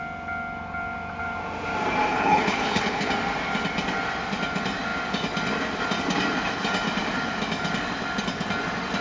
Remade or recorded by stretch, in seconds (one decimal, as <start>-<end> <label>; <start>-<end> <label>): 0.0-2.1 recorded; 2.1-3.1 remade; 3.1-9.0 recorded